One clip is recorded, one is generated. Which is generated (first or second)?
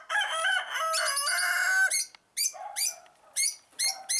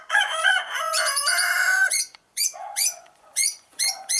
second